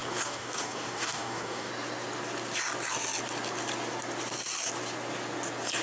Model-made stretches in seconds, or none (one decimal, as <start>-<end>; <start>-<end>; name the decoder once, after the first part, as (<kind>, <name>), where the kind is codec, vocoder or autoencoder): 0.0-1.7 (codec, DAC)